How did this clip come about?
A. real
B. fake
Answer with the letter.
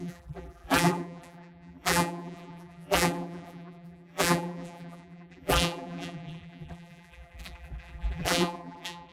B